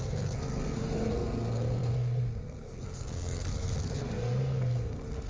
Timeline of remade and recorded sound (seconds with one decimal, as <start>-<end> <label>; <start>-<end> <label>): 0.0-5.3 remade